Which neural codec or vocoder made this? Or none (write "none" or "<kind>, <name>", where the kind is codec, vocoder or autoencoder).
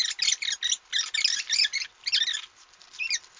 none